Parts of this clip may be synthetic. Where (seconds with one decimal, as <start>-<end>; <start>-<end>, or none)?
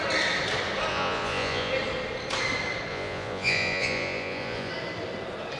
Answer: 0.9-1.7; 2.9-4.7